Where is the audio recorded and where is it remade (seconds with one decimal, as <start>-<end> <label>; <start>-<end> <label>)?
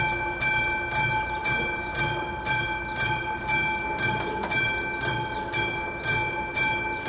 0.0-7.1 recorded